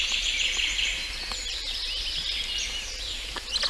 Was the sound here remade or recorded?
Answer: recorded